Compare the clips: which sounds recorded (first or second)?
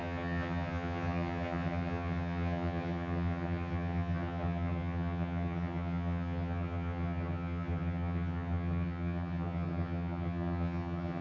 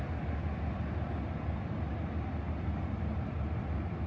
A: second